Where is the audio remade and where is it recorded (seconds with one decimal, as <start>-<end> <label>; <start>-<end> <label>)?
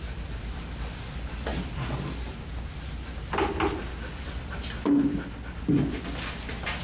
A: 0.0-6.8 recorded